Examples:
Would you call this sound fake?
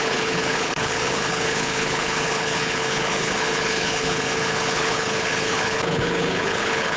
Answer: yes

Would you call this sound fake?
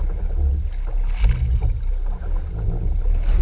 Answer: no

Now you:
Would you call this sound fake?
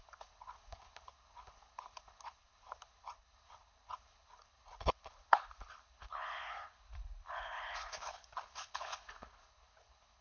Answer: yes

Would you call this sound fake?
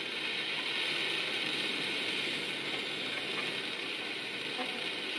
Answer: no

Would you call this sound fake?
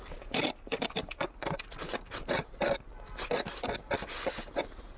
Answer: no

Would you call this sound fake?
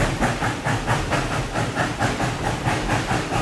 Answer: no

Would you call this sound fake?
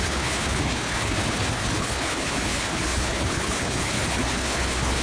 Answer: yes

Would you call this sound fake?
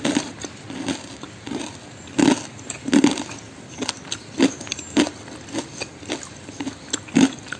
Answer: no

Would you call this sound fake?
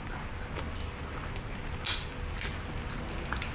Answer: no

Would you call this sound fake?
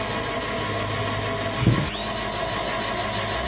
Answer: no